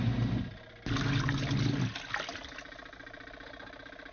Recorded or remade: recorded